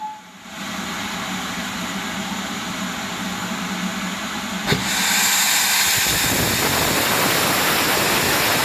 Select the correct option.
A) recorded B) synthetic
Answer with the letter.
A